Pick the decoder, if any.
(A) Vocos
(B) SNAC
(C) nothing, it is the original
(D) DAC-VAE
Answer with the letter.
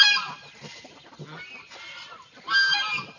C